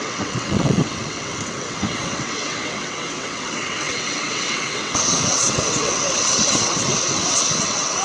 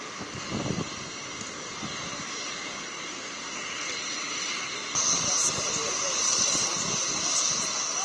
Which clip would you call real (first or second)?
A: second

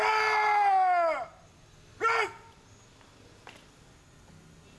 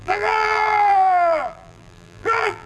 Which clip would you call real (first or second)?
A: first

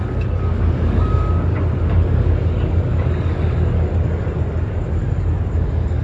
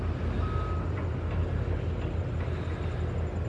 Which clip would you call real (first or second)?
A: second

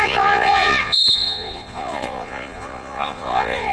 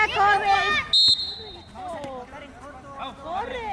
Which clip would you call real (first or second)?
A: second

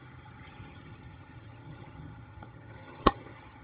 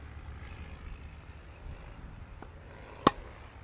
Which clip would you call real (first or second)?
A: second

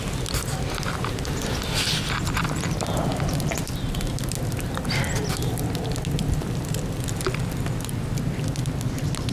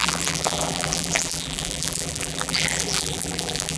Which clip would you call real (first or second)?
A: first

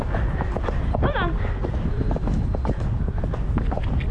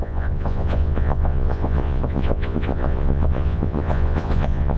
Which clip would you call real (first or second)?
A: first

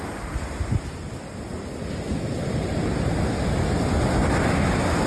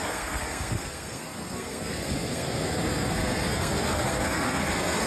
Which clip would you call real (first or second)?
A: first